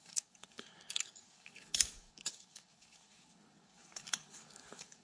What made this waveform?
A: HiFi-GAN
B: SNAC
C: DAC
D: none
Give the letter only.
C